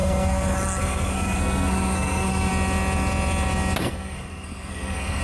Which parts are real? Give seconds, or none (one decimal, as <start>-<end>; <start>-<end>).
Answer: 2.5-3.8